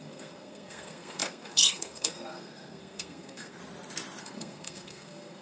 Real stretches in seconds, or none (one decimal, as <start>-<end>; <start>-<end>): 3.6-4.2